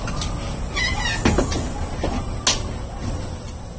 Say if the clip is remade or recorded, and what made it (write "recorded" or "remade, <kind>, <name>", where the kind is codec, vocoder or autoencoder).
recorded